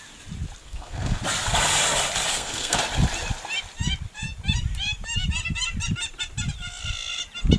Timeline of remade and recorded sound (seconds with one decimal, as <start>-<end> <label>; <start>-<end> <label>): 0.0-0.6 recorded; 0.6-1.2 remade; 1.2-2.3 recorded; 2.3-2.8 remade; 2.8-7.6 recorded